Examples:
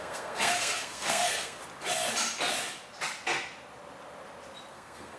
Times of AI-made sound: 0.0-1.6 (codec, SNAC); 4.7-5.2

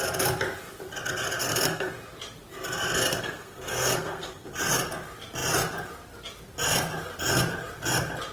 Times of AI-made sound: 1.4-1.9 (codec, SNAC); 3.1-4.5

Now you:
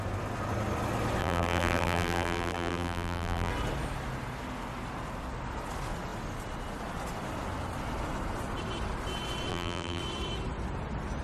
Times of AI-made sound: 1.2-3.5 (vocoder, BigVGAN v2); 9.5-10.0

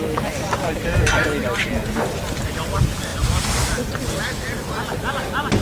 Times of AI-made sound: none

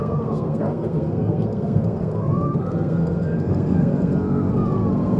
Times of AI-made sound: 0.0-5.2 (codec, SNAC)